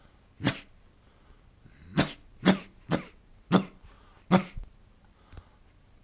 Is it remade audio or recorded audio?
recorded